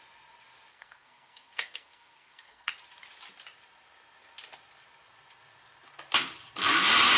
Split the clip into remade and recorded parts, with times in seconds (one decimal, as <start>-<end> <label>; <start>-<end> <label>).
0.0-0.7 recorded; 0.7-2.7 remade; 2.7-7.2 recorded